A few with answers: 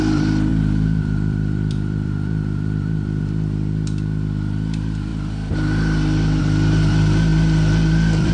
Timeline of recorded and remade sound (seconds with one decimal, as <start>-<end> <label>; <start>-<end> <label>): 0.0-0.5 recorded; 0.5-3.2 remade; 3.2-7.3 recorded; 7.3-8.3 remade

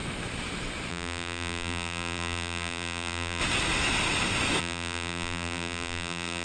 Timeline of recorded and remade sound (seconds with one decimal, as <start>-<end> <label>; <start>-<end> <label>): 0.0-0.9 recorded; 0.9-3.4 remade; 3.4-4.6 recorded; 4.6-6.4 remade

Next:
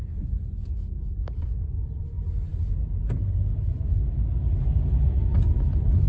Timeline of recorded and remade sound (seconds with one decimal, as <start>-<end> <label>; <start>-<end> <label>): 0.0-6.1 recorded

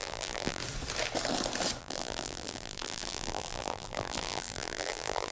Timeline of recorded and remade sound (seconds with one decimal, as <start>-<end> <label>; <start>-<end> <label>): 0.0-0.6 remade; 0.6-1.8 recorded; 1.8-5.3 remade